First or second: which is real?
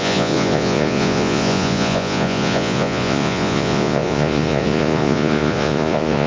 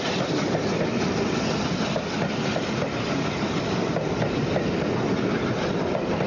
second